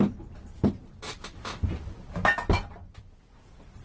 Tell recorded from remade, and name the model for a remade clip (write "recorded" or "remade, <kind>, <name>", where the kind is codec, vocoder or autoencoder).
recorded